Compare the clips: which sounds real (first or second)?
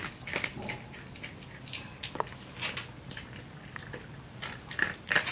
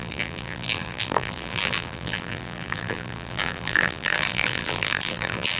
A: first